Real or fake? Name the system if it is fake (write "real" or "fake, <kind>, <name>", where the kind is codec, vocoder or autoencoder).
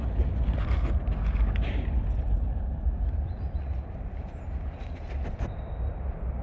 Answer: real